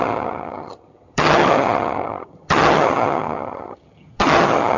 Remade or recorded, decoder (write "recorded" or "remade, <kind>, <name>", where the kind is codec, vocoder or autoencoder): remade, vocoder, HiFi-GAN